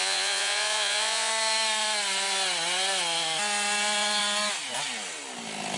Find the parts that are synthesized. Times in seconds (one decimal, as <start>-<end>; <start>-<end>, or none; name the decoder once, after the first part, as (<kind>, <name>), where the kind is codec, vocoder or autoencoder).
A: 0.0-1.3 (vocoder, Vocos)